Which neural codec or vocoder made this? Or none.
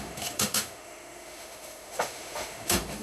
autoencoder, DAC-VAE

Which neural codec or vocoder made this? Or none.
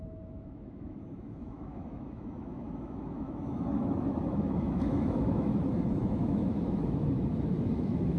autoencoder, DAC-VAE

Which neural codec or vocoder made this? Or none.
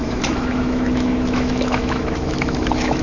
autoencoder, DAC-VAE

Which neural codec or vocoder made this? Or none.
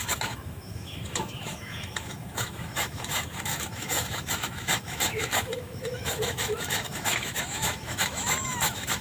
autoencoder, DAC-VAE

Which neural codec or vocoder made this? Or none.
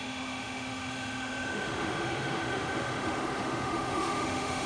autoencoder, DAC-VAE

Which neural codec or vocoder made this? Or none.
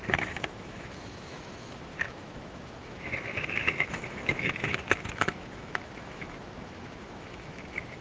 autoencoder, DAC-VAE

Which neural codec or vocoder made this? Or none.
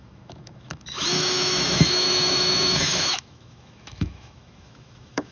autoencoder, DAC-VAE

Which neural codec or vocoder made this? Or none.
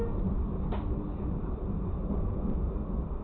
none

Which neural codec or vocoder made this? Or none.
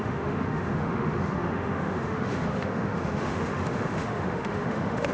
autoencoder, DAC-VAE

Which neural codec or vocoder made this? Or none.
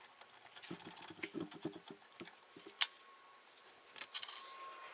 none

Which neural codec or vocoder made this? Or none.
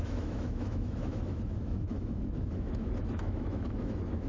autoencoder, DAC-VAE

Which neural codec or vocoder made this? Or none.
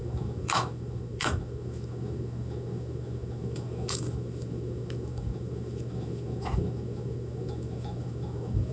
autoencoder, DAC-VAE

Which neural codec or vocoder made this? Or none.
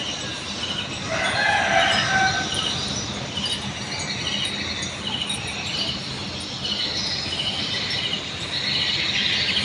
none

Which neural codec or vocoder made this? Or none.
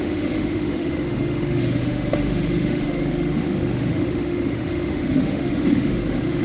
autoencoder, DAC-VAE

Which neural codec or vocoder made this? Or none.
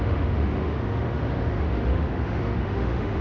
autoencoder, DAC-VAE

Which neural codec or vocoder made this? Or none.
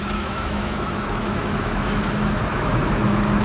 autoencoder, DAC-VAE